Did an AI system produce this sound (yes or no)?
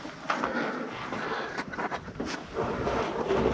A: no